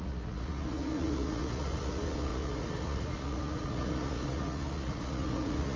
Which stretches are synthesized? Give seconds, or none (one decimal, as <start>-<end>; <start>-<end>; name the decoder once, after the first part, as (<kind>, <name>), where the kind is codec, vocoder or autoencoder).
0.0-5.8 (vocoder, Vocos)